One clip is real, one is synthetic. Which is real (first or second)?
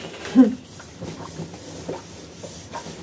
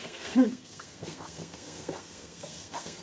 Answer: first